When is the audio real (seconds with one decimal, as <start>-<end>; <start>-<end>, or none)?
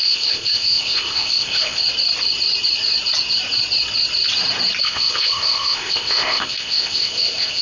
1.8-4.8